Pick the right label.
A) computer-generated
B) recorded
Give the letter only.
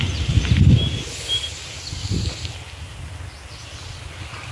B